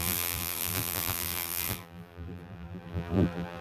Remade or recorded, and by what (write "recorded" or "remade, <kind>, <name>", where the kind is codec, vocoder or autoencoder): remade, vocoder, BigVGAN v2